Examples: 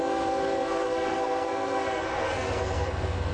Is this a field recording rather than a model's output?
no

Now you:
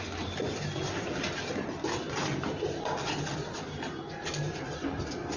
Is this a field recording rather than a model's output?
yes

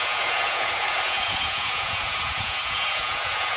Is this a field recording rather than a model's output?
no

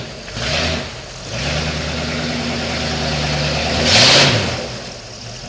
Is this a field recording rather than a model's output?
yes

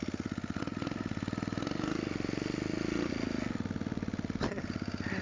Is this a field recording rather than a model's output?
yes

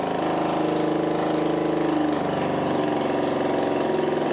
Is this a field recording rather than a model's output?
yes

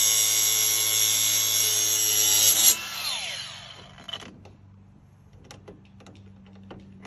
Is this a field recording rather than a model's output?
yes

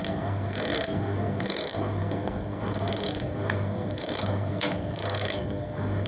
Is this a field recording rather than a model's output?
no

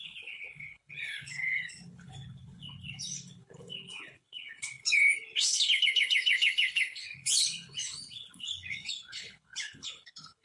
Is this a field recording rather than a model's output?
no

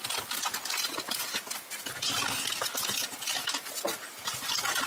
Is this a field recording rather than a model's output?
yes